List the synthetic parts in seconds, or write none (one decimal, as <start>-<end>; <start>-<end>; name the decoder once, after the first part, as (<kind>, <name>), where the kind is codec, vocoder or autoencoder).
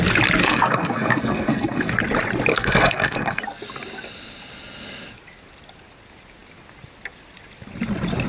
0.4-1.9 (codec, SNAC); 2.5-3.4